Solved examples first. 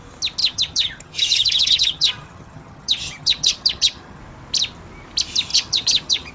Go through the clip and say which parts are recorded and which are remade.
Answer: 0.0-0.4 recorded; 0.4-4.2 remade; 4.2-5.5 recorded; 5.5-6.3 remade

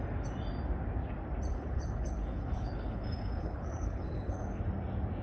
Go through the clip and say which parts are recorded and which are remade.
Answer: 0.0-1.5 recorded; 1.5-4.6 remade; 4.6-5.2 recorded

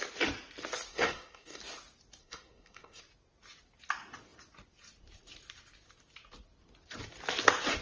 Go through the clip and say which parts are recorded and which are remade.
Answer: 0.0-0.9 recorded; 0.9-1.6 remade; 1.6-2.2 recorded; 2.2-3.0 remade; 3.0-7.8 recorded

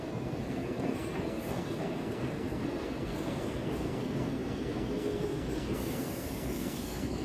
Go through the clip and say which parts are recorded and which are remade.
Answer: 0.0-7.2 remade